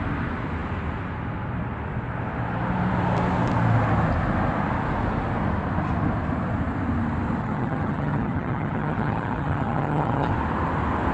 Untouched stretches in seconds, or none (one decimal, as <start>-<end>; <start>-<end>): 0.0-7.4; 10.3-11.1